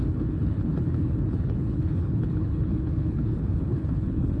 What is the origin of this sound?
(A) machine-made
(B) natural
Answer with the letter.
A